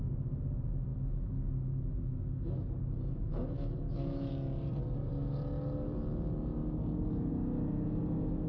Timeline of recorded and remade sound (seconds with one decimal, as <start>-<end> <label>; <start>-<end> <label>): 0.0-0.9 recorded; 0.9-4.3 remade; 4.3-8.5 recorded